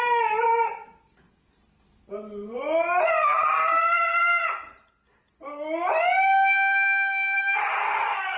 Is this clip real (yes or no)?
yes